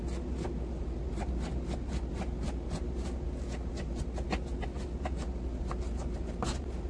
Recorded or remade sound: recorded